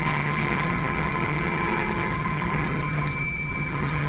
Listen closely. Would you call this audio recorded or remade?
remade